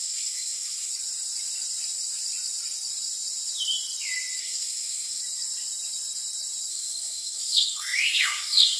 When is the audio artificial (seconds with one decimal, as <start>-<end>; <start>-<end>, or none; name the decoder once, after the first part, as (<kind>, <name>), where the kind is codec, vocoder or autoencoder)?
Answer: 0.0-0.9 (codec, SNAC); 4.4-5.2; 6.7-8.8